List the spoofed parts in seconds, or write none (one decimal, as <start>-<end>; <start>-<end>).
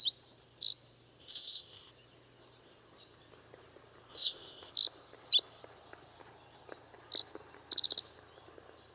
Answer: 1.2-1.9; 4.1-4.7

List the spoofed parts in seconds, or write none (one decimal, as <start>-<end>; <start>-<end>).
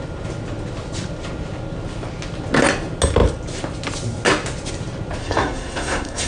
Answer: 5.2-6.3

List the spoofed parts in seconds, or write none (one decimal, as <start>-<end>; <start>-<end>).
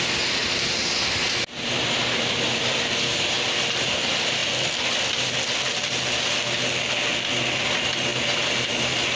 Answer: none